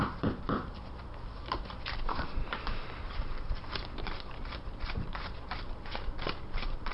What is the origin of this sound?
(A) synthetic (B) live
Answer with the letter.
A